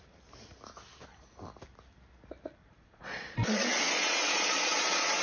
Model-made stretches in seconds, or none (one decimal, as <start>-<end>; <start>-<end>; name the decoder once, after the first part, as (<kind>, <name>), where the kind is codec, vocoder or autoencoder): 2.6-5.2 (vocoder, Vocos)